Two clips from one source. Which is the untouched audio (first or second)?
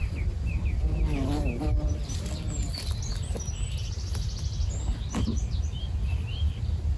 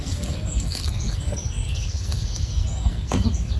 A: first